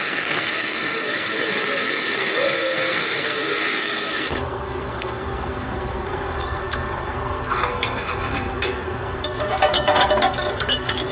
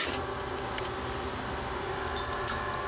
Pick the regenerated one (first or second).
first